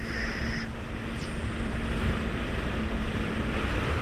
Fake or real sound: real